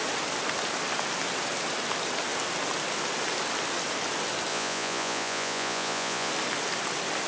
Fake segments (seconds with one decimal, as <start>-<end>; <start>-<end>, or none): 4.5-6.3